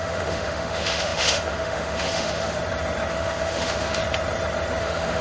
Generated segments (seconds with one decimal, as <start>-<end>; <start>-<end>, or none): 0.0-2.6; 3.1-4.0; 4.8-5.2